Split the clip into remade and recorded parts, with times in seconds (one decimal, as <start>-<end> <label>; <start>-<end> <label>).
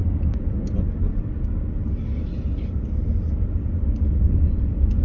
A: 0.0-1.5 remade; 1.5-5.0 recorded